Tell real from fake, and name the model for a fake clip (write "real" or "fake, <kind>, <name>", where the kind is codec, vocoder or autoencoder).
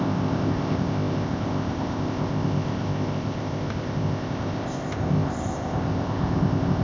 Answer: fake, codec, ZipCodec